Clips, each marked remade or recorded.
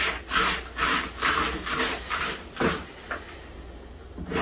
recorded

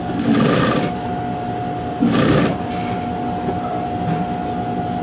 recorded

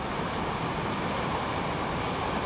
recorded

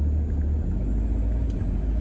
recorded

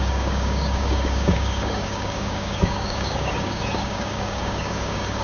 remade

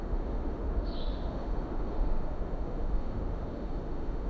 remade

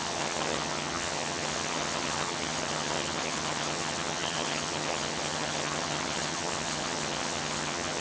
remade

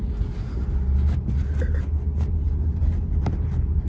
recorded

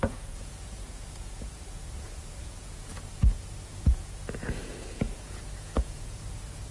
remade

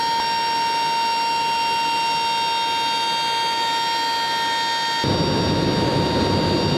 recorded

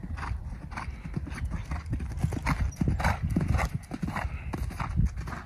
recorded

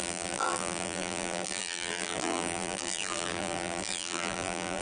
remade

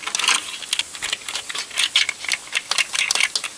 recorded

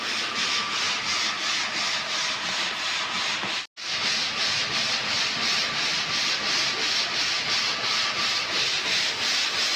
recorded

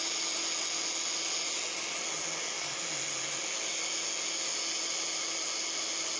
recorded